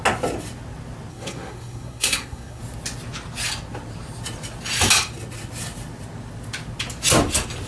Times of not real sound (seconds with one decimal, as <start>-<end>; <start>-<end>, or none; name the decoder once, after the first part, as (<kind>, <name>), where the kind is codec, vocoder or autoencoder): 1.1-2.6 (codec, SNAC)